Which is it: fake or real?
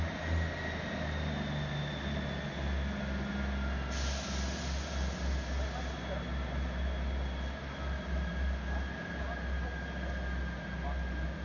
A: real